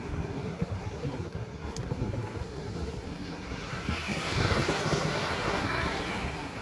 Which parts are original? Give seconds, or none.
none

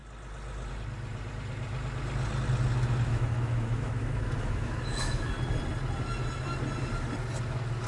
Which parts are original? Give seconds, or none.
0.0-3.1; 5.3-7.9